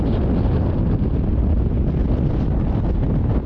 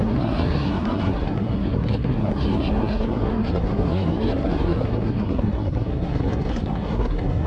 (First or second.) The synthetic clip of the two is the second